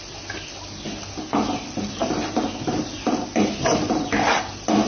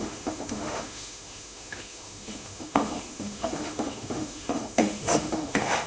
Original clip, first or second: first